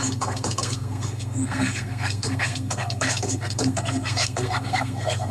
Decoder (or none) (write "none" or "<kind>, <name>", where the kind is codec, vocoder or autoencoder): codec, SNAC